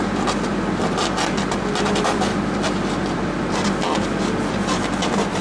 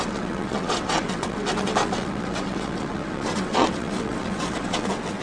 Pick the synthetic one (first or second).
second